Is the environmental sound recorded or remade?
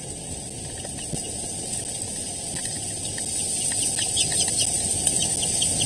recorded